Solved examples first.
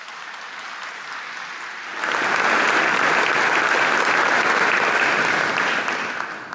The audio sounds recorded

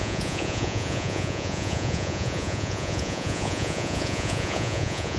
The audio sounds remade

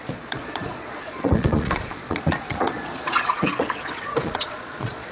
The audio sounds remade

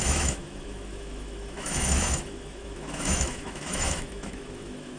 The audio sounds remade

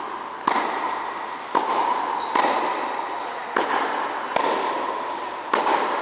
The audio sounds recorded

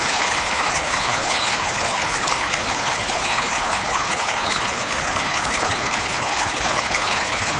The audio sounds remade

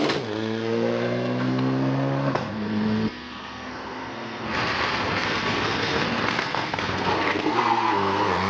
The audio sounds remade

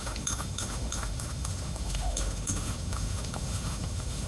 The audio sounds remade